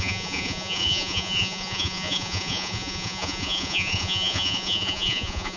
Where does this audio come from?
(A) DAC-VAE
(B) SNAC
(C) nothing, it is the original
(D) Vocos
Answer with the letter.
D